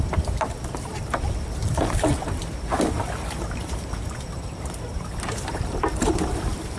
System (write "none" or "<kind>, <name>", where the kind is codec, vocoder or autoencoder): vocoder, BigVGAN v2